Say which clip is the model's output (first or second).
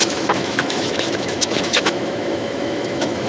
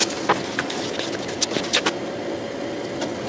first